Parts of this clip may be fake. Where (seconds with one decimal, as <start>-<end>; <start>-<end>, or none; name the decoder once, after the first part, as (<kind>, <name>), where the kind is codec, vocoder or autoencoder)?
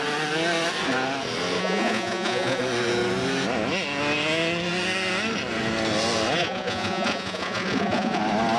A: 1.6-2.6 (vocoder, Vocos); 6.4-8.2